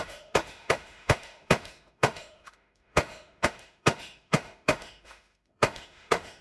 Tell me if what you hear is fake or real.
fake